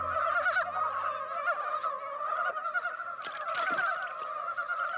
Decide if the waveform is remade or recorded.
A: recorded